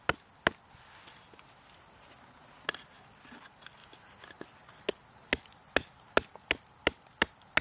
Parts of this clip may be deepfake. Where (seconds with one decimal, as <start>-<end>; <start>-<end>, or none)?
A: none